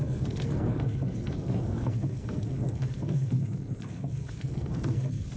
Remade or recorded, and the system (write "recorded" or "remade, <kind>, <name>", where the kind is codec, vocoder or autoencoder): remade, codec, SNAC